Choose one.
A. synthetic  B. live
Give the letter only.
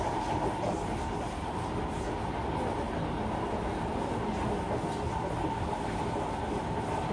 B